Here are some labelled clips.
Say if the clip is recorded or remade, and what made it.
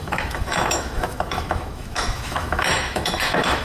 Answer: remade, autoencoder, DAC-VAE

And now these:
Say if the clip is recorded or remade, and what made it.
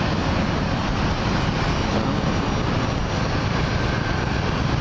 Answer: recorded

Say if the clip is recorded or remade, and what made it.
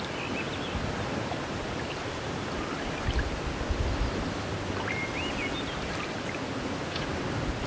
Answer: recorded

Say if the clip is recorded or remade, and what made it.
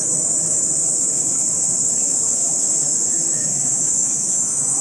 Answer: remade, autoencoder, DAC-VAE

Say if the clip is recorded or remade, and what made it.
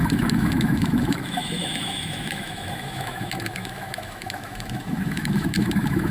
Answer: remade, autoencoder, DAC-VAE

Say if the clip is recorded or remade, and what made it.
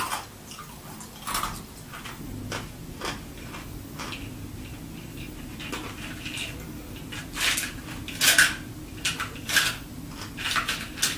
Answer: recorded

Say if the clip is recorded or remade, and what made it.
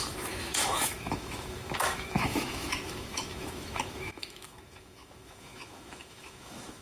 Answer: remade, autoencoder, DAC-VAE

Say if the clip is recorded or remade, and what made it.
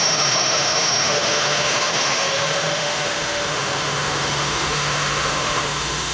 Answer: remade, autoencoder, DAC-VAE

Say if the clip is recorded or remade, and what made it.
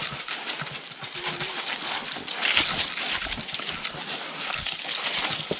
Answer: recorded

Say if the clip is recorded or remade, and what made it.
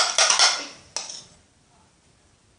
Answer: recorded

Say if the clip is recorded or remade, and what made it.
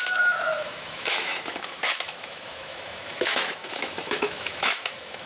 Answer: remade, autoencoder, DAC-VAE